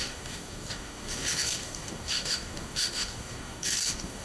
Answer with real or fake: fake